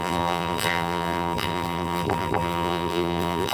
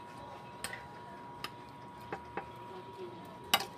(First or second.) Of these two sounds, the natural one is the second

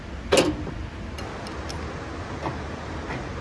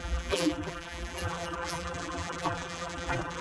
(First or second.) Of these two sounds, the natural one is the first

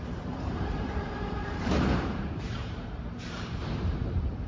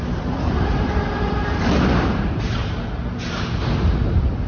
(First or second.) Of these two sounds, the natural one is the second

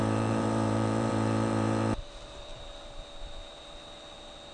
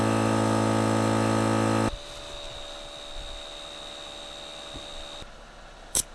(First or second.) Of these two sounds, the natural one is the second